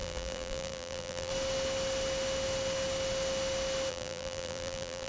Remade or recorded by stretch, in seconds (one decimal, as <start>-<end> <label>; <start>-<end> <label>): 0.0-1.3 remade; 1.3-3.9 recorded; 3.9-5.1 remade